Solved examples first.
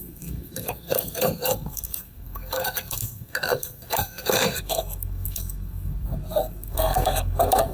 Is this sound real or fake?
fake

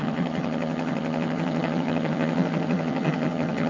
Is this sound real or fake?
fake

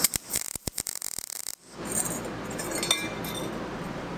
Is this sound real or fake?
real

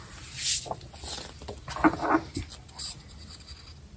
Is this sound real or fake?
real